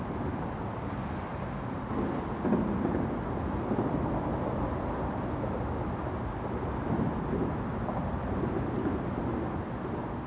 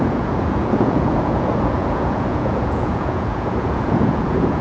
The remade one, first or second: second